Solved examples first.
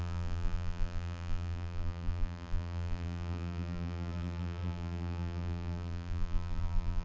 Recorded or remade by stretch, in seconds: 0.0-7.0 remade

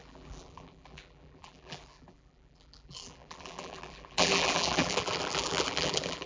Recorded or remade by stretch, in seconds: 0.0-6.3 remade

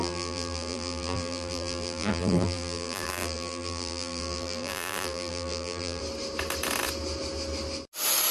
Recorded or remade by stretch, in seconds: 0.0-6.0 remade; 6.0-8.3 recorded